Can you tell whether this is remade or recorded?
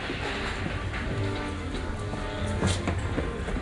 recorded